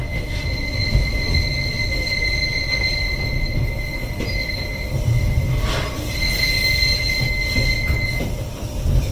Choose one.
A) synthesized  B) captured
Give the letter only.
B